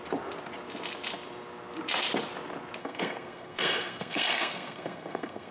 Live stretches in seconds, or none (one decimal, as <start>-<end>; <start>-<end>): 0.0-2.8